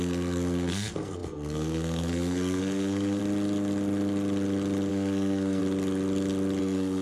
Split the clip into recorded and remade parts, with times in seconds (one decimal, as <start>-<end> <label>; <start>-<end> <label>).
0.0-3.2 remade; 3.2-4.9 recorded; 4.9-5.6 remade; 5.6-6.6 recorded; 6.6-7.0 remade

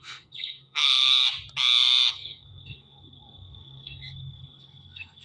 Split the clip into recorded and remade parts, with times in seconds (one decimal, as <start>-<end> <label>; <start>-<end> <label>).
0.0-1.1 remade; 1.1-2.1 recorded; 2.1-5.2 remade